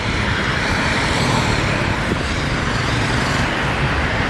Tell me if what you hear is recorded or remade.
remade